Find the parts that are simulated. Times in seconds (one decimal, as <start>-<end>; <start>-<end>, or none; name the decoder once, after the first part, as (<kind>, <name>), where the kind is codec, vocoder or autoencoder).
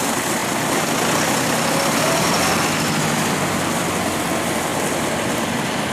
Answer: none